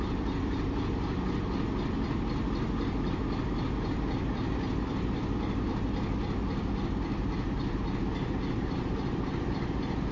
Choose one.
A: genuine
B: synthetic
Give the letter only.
A